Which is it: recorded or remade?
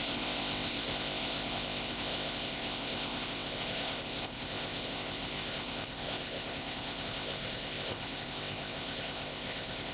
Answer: remade